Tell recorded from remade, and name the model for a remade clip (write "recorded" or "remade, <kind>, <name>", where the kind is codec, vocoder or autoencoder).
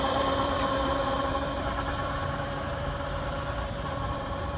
remade, vocoder, BigVGAN v2